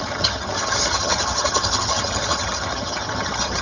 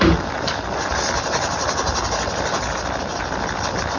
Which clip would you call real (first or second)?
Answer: second